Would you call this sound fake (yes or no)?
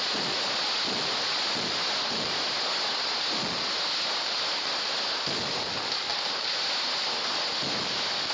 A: no